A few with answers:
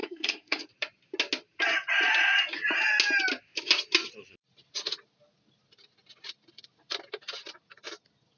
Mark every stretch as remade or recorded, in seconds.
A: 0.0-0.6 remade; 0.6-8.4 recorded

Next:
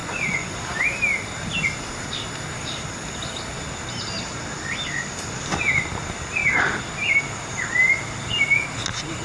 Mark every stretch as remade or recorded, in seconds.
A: 0.0-0.6 remade; 0.6-9.2 recorded

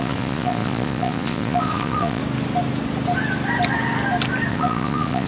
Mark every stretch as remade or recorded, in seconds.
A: 0.0-2.2 remade; 2.2-4.5 recorded; 4.5-5.3 remade

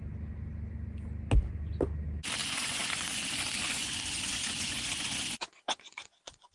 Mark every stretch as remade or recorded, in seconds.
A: 0.0-2.4 recorded; 2.4-6.5 remade

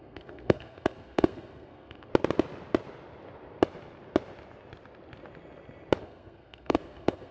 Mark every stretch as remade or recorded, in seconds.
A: 0.0-2.1 remade; 2.1-6.0 recorded; 6.0-7.3 remade

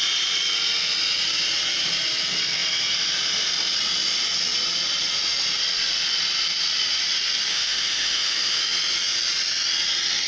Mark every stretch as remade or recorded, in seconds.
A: 0.0-7.5 recorded; 7.5-8.6 remade; 8.6-10.3 recorded